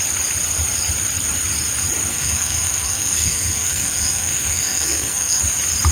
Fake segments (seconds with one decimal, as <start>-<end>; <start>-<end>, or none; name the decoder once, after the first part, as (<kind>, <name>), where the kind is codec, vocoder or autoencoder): 2.1-5.4 (codec, SNAC)